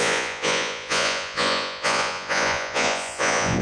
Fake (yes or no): yes